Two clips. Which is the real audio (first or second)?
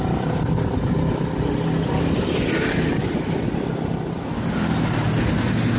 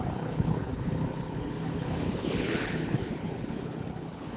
first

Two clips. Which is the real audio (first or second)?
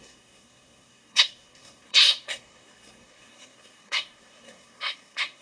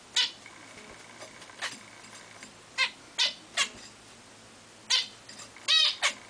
second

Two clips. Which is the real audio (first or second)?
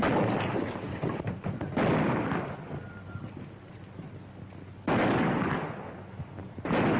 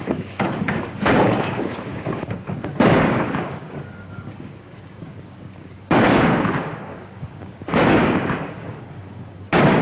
first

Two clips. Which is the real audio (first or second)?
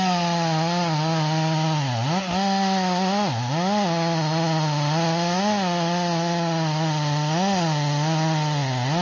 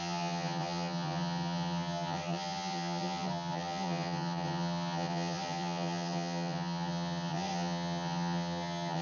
first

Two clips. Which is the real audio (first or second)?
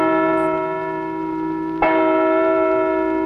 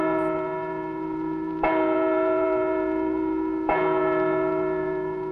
first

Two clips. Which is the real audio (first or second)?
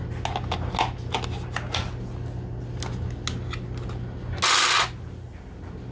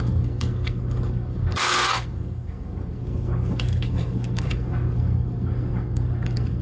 first